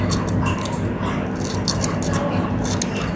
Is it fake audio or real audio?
real